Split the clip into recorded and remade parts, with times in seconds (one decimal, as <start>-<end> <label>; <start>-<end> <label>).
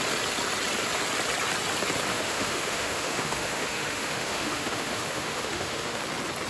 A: 0.0-2.1 recorded; 2.1-6.0 remade; 6.0-6.5 recorded